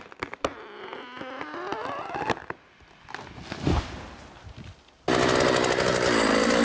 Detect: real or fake real